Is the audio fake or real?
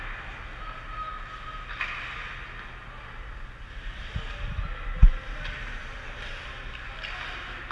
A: real